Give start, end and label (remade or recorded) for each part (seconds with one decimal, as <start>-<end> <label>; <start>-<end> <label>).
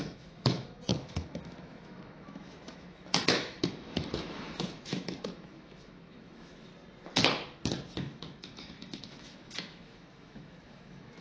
0.0-6.7 remade; 6.7-7.9 recorded; 7.9-11.2 remade